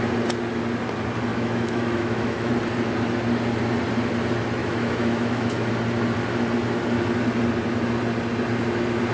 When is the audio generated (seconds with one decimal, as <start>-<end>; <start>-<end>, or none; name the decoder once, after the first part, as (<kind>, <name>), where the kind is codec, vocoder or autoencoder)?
1.3-2.5 (autoencoder, DAC-VAE); 4.6-5.7